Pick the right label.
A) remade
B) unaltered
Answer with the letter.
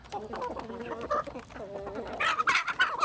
B